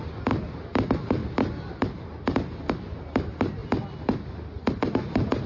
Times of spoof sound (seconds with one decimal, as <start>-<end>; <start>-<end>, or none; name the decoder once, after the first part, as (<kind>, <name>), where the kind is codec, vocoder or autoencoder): none